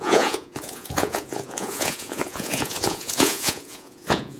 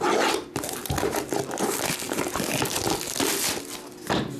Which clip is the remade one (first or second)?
first